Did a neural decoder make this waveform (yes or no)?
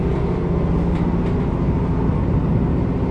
no